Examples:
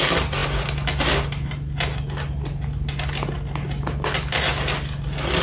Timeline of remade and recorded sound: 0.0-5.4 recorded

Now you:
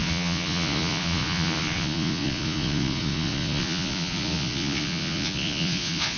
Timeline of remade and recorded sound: 0.0-6.2 remade

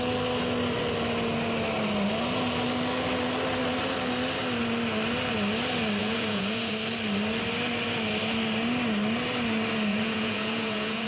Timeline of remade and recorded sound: 0.0-6.0 recorded; 6.0-6.7 remade; 6.7-9.9 recorded; 9.9-11.1 remade

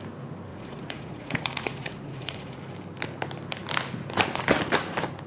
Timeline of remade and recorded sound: 0.0-0.5 recorded; 0.5-2.6 remade; 2.6-5.3 recorded

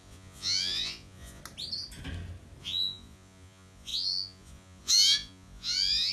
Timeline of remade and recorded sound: 0.0-1.4 remade; 1.4-2.6 recorded; 2.6-6.1 remade

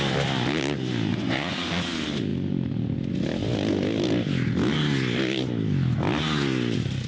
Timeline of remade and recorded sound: 0.0-1.1 recorded; 1.1-1.8 remade; 1.8-7.1 recorded

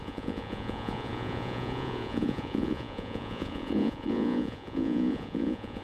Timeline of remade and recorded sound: 0.0-5.8 remade

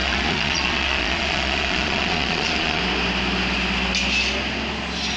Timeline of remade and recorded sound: 0.0-2.8 remade; 2.8-5.2 recorded